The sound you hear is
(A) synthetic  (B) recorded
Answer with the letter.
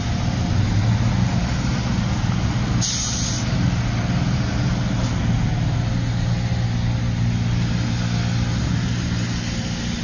B